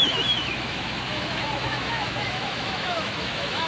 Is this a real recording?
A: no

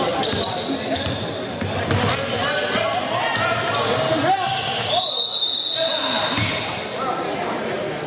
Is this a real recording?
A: yes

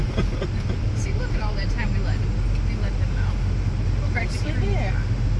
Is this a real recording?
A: yes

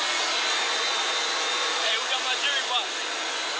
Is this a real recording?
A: yes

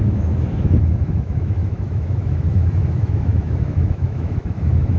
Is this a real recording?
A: no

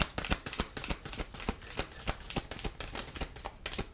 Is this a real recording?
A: yes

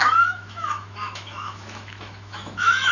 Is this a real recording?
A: no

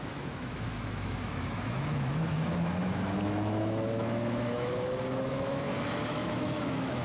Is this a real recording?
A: no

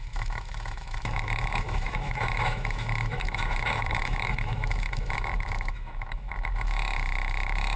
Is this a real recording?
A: no